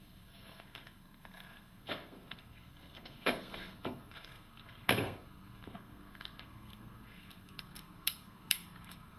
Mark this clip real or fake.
fake